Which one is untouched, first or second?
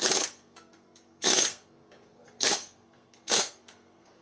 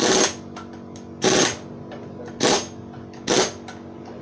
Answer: second